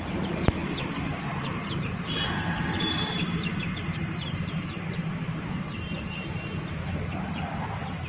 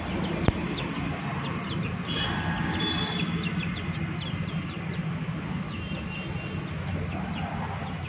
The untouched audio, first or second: second